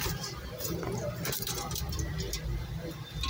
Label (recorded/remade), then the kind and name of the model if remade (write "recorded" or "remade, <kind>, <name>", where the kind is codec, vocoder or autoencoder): remade, vocoder, BigVGAN v2